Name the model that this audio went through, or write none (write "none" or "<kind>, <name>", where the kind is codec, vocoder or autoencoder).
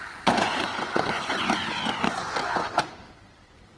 vocoder, Vocos